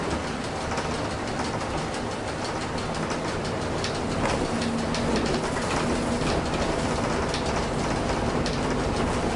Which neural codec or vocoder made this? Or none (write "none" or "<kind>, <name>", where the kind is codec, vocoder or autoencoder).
none